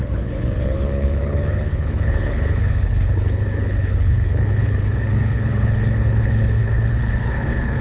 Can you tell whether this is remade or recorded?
remade